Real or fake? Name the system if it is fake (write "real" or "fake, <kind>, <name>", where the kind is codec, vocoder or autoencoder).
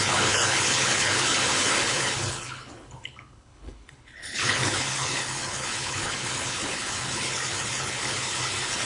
fake, codec, HILCodec